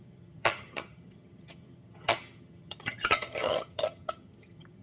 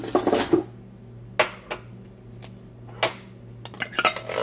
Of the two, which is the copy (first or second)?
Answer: first